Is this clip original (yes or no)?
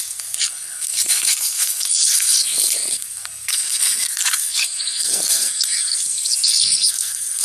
no